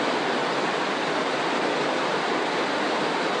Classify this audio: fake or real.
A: real